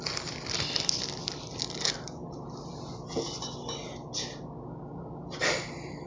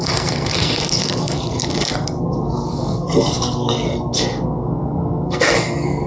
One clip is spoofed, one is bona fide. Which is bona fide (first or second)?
first